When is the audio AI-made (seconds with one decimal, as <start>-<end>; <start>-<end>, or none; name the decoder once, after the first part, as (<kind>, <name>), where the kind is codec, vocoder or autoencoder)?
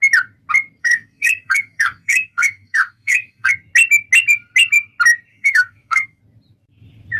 0.8-3.5 (codec, SNAC); 5.3-6.2